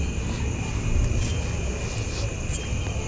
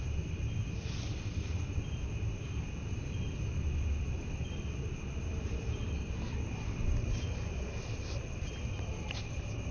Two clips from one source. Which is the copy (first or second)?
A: second